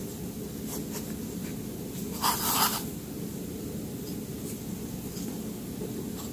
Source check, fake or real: real